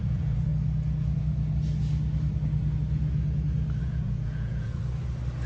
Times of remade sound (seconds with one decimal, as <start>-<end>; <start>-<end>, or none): 0.0-0.5; 3.8-4.8